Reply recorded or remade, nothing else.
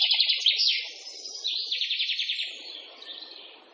remade